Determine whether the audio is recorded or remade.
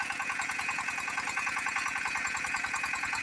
remade